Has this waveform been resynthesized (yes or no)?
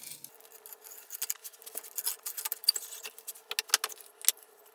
no